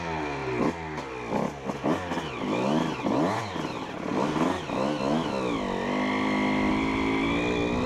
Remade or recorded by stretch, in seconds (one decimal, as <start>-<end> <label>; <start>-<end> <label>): 0.0-7.9 recorded

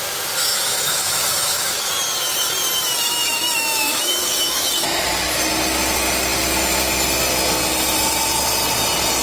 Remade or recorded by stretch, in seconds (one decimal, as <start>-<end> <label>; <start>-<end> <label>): 0.0-0.5 recorded; 0.5-1.9 remade; 1.9-3.0 recorded; 3.0-4.7 remade; 4.7-9.2 recorded

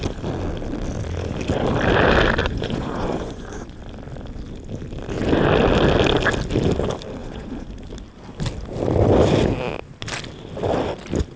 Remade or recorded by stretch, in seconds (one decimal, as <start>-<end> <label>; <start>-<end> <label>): 0.0-2.4 recorded; 2.4-3.8 remade; 3.8-7.2 recorded; 7.2-7.7 remade; 7.7-11.4 recorded

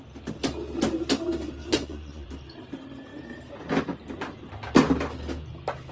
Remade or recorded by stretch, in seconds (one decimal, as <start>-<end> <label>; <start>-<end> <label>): 0.0-1.6 recorded; 1.6-2.3 remade; 2.3-5.9 recorded

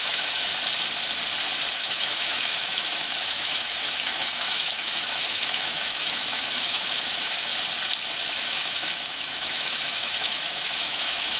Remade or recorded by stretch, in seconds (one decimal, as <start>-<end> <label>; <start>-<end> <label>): 0.0-0.5 remade; 0.5-1.7 recorded; 1.7-7.5 remade; 7.5-8.4 recorded; 8.4-11.4 remade

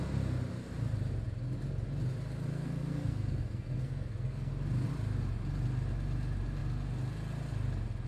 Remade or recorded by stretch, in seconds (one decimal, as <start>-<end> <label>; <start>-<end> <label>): 0.0-2.5 recorded; 2.5-4.5 remade; 4.5-8.1 recorded

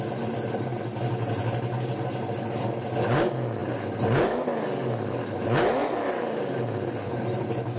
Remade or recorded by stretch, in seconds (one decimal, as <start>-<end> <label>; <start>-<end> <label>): 0.0-7.8 recorded

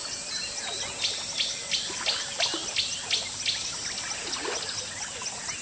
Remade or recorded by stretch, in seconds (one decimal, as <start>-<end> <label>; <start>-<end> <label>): 0.0-5.6 recorded